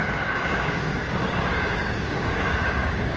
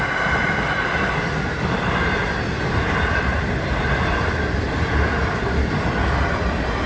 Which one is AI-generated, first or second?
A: first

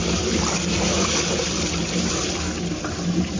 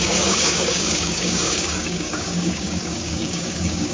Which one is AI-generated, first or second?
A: second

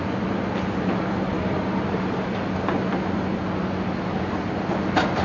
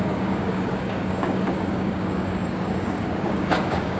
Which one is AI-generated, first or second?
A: second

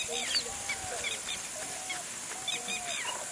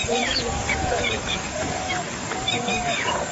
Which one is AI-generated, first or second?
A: second